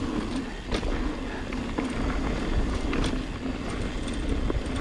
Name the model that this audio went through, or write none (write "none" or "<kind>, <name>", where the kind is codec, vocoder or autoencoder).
none